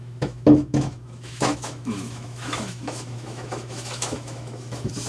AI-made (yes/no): yes